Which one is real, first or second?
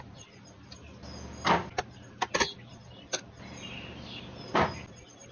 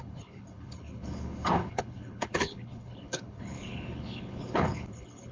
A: first